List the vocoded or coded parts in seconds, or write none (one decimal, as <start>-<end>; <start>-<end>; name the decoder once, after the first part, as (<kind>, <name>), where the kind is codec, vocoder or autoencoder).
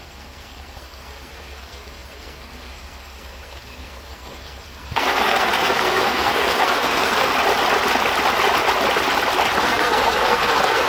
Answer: 0.0-7.3 (codec, SNAC); 9.6-10.9